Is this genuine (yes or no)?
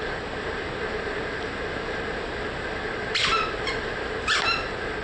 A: yes